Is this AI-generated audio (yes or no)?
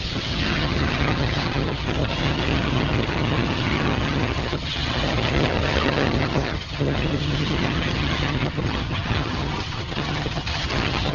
yes